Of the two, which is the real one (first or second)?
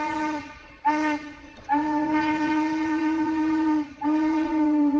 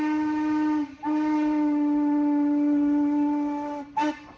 second